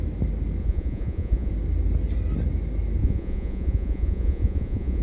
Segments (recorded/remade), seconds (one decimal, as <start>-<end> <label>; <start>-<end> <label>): 0.0-0.6 recorded; 0.6-1.5 remade; 1.5-3.0 recorded; 3.0-5.0 remade